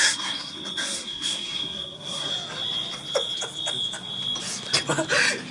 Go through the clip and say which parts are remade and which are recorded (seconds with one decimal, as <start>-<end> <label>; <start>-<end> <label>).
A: 0.0-2.3 remade; 2.3-5.5 recorded